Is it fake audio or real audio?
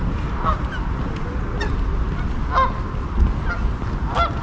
real